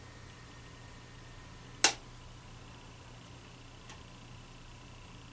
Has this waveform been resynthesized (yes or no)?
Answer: no